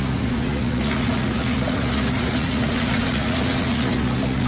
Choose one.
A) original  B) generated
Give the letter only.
B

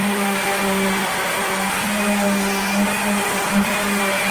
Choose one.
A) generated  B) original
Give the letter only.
B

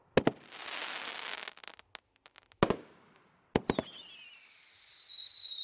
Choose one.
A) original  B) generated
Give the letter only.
A